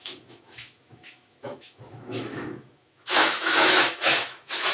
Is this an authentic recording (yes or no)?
no